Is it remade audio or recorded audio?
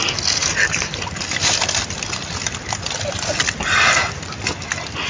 recorded